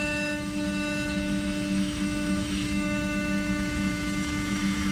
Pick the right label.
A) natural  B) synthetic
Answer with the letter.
B